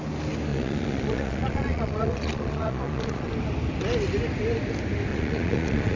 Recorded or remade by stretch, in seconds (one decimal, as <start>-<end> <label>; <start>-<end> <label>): 0.0-0.5 recorded; 0.5-3.3 remade; 3.3-5.1 recorded; 5.1-6.0 remade

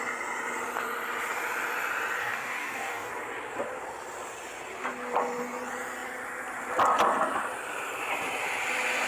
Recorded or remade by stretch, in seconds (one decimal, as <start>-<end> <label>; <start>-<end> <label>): 0.0-2.2 recorded; 2.2-3.1 remade; 3.1-9.1 recorded